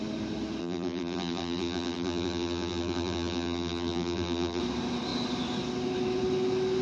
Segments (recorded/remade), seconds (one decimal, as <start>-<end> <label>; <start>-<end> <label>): 0.0-0.6 recorded; 0.6-4.6 remade; 4.6-6.8 recorded